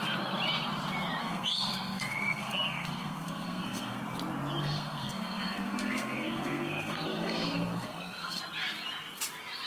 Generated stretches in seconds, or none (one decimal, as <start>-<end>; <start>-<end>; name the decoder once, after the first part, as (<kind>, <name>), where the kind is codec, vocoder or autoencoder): 1.2-4.0 (codec, SNAC); 4.6-8.4